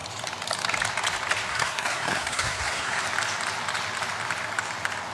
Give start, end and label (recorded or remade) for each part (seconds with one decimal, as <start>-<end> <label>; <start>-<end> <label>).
0.0-1.5 recorded; 1.5-3.0 remade; 3.0-5.1 recorded